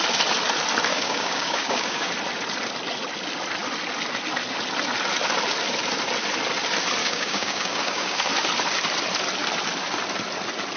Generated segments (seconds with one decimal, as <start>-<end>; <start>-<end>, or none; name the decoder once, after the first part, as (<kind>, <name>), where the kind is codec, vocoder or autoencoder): 0.9-2.1 (codec, DAC); 7.0-8.3